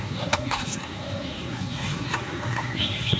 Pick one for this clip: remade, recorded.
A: remade